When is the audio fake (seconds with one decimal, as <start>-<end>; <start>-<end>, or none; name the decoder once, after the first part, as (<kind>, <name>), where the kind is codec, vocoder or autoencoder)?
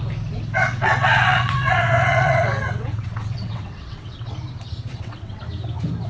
0.6-4.3 (vocoder, WaveNeXt); 4.9-5.4